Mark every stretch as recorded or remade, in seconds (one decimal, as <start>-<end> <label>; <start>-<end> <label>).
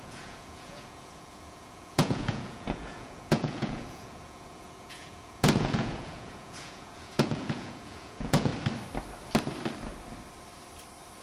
0.0-8.5 remade; 8.5-11.2 recorded